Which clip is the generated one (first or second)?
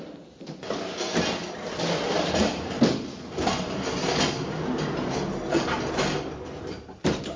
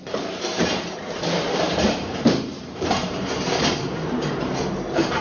second